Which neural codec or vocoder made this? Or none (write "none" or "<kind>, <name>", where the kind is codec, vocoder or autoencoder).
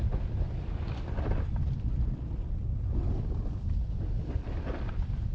none